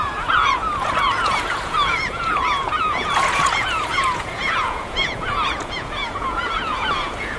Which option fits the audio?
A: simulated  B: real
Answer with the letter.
A